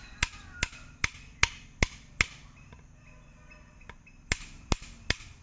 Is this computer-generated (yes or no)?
no